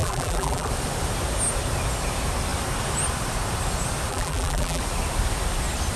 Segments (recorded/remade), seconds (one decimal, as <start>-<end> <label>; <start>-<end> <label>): 0.0-0.7 remade; 0.7-4.1 recorded; 4.1-4.8 remade; 4.8-6.0 recorded